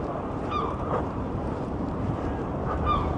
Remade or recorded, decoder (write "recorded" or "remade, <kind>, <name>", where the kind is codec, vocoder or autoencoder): remade, vocoder, BigVGAN v2